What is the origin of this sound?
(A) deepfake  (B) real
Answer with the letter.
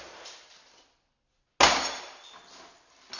B